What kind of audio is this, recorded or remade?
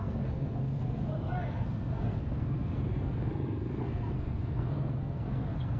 remade